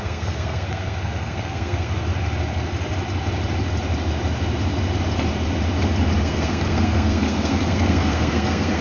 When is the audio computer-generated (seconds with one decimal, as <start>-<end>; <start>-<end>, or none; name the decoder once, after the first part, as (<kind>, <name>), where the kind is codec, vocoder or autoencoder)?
0.0-2.1 (codec, SNAC); 6.2-8.8